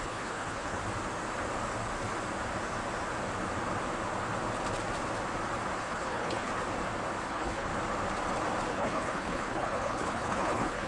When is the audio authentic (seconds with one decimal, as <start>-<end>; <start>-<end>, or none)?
0.8-5.8; 6.5-7.3; 7.7-8.7